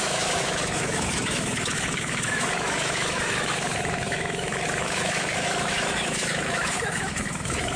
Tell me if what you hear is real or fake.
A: fake